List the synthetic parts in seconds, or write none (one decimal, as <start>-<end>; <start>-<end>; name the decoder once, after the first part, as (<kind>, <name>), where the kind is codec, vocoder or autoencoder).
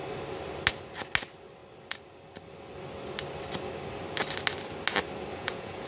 5.3-5.9 (vocoder, Vocos)